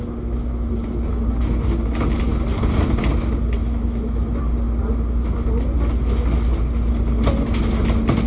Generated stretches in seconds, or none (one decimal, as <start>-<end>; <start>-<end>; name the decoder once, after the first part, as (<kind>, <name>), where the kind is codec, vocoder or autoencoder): 3.6-4.4 (autoencoder, DAC-VAE)